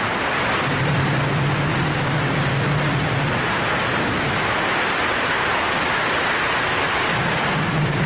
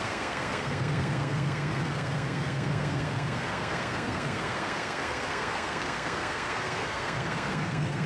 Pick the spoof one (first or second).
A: second